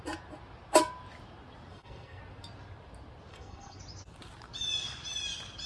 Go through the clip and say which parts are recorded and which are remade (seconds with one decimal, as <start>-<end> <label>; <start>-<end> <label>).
0.0-1.7 recorded; 1.7-2.2 remade; 2.2-3.3 recorded; 3.3-3.8 remade; 3.8-5.7 recorded